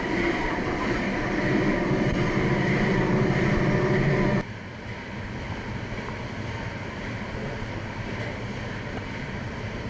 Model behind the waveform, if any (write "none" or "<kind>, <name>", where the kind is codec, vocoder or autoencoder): none